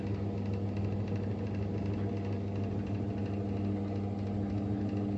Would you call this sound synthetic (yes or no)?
no